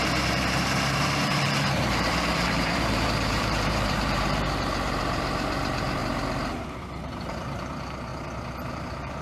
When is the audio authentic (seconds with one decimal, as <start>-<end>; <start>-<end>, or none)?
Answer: 6.0-7.0; 8.1-8.7